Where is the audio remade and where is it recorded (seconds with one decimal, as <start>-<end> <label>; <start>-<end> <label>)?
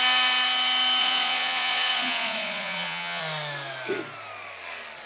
0.0-1.0 recorded; 1.0-3.2 remade; 3.2-5.1 recorded